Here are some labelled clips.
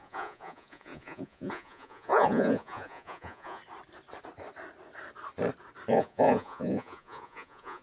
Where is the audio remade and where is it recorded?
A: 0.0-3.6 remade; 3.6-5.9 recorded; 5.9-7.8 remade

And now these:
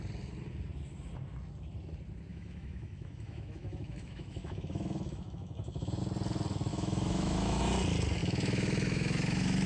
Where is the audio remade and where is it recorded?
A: 0.0-2.3 recorded; 2.3-6.0 remade; 6.0-6.7 recorded; 6.7-7.6 remade; 7.6-8.2 recorded; 8.2-9.7 remade

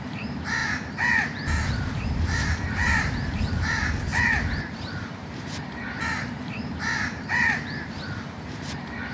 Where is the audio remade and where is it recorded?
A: 0.0-9.1 remade